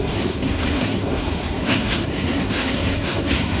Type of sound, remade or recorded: remade